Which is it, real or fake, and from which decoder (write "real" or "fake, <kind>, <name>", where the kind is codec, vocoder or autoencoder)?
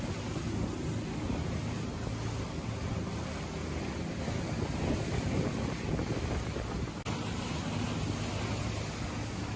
real